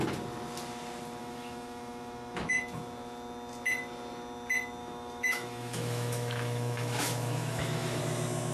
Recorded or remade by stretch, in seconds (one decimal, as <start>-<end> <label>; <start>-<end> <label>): 0.0-1.2 recorded; 1.2-2.6 remade; 2.6-4.8 recorded; 4.8-8.0 remade; 8.0-8.5 recorded